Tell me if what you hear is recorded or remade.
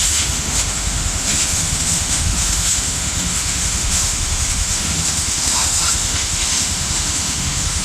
remade